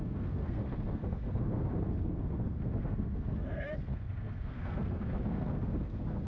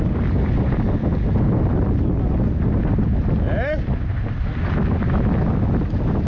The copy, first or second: first